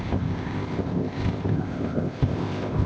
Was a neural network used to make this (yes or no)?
yes